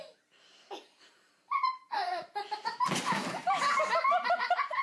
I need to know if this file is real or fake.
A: real